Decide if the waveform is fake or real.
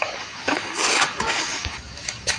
fake